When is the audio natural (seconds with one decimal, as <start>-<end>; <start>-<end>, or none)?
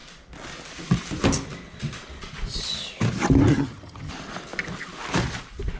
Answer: 0.0-3.5; 4.1-5.8